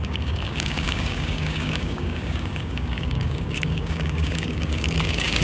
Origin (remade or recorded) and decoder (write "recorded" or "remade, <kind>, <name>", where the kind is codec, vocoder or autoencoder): remade, codec, DAC